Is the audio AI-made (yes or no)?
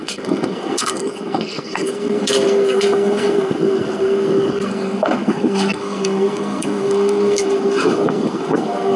yes